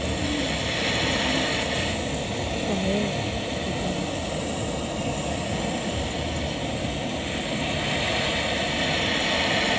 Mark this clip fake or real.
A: real